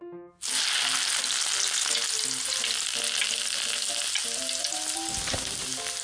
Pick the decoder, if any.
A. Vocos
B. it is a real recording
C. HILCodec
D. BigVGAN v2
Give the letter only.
B